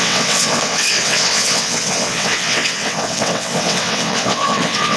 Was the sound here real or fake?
fake